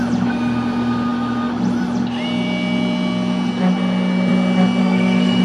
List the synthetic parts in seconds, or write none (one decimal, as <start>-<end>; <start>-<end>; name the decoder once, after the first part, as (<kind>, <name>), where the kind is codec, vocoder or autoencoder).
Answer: 4.8-5.4 (codec, SNAC)